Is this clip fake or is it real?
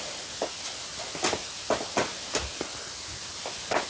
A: real